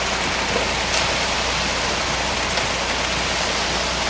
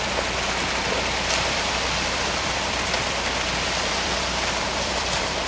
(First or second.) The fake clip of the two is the second